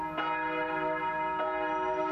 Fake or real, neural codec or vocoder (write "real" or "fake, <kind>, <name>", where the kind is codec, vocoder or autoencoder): real